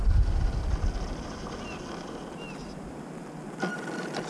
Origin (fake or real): real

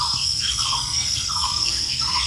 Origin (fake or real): fake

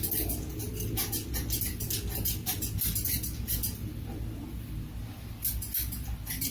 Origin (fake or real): real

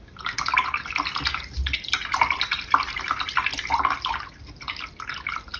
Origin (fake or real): real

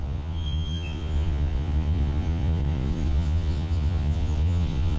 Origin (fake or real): fake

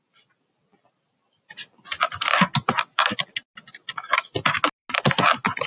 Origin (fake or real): real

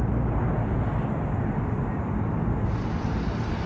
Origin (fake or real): real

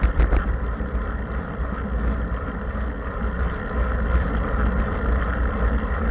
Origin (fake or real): real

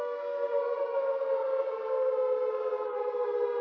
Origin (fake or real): fake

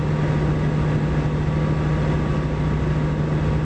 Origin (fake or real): real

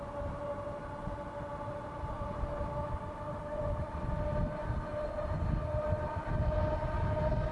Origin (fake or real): real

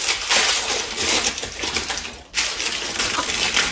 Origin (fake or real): real